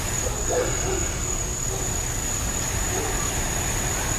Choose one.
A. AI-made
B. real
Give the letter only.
B